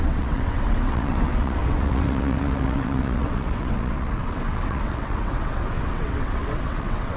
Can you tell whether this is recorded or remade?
remade